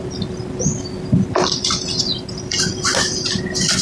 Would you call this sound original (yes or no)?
yes